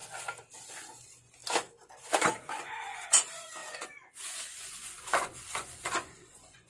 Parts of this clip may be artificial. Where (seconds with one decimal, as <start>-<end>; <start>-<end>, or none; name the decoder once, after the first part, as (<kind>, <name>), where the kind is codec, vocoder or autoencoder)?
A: 0.7-1.4 (vocoder, Vocos); 2.2-6.7